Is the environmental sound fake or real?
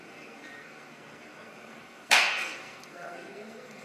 fake